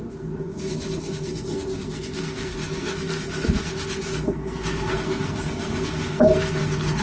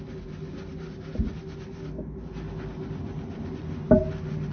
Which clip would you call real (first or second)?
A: second